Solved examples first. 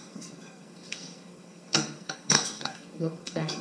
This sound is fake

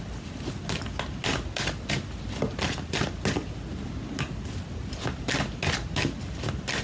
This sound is real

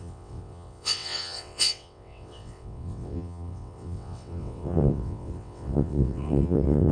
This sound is fake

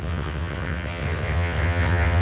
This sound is fake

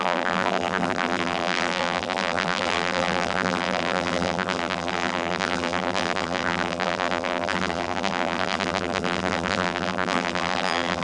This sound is fake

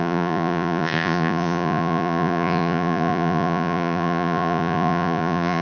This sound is fake